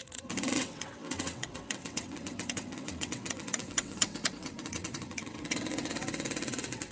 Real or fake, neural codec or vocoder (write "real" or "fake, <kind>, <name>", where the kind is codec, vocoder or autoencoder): fake, vocoder, WaveNeXt